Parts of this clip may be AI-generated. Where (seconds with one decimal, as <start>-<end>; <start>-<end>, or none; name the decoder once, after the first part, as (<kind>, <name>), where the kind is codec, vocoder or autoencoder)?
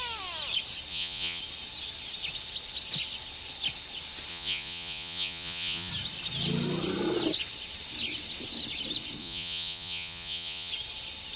0.9-1.4 (vocoder, Vocos); 4.3-5.9; 9.2-10.7